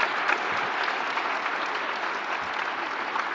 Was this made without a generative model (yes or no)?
yes